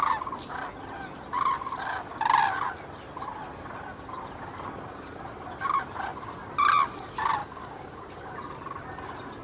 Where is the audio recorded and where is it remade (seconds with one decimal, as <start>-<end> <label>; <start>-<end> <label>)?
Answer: 0.0-7.4 recorded; 7.4-8.1 remade; 8.1-9.4 recorded